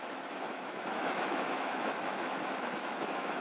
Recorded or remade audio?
remade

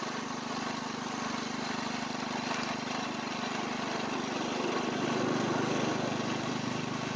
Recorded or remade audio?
recorded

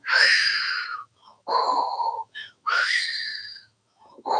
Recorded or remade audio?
remade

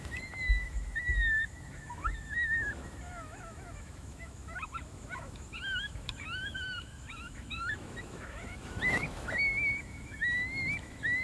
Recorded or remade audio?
remade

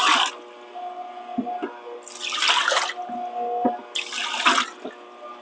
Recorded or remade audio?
recorded